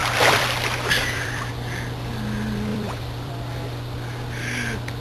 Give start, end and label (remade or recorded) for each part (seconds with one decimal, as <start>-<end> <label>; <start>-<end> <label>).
0.0-1.5 remade; 1.5-2.7 recorded; 2.7-3.3 remade; 3.3-5.0 recorded